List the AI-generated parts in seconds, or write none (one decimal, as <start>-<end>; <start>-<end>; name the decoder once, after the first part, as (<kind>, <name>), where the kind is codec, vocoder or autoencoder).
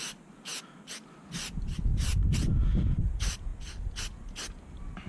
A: 1.9-2.5 (vocoder, BigVGAN v2)